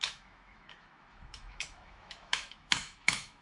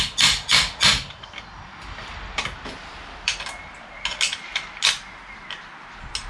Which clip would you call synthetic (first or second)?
first